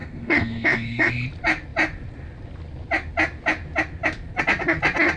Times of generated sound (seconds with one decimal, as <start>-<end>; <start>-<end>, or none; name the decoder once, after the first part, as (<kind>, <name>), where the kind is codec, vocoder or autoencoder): 0.0-1.1 (codec, SNAC)